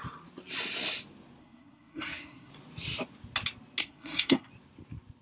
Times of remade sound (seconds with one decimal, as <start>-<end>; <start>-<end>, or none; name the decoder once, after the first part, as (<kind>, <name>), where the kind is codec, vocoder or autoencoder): 1.4-2.5 (codec, SNAC); 3.8-4.5